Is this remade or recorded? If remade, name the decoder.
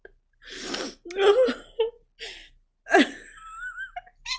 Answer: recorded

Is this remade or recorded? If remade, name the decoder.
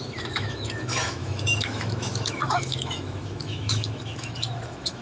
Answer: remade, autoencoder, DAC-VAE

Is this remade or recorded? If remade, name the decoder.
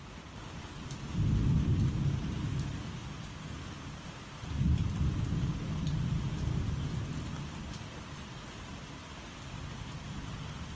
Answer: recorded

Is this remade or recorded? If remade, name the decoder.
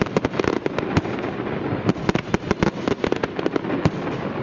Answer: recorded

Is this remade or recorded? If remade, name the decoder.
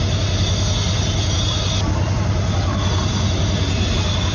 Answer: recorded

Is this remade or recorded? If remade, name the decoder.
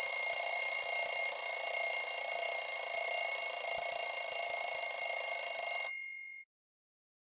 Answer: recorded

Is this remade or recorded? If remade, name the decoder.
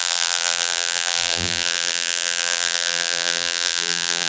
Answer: remade, vocoder, BigVGAN v2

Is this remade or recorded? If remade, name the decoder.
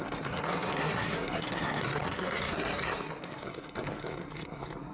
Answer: remade, codec, SNAC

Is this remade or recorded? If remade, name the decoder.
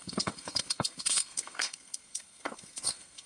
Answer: remade, codec, SNAC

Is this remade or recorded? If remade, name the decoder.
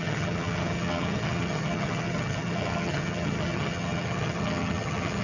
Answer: remade, vocoder, HiFi-GAN